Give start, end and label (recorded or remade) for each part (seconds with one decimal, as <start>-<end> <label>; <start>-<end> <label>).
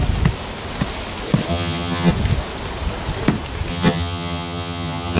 0.0-1.5 recorded; 1.5-2.1 remade; 2.1-3.7 recorded; 3.7-5.2 remade